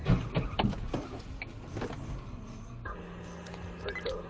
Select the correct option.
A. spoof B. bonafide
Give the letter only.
B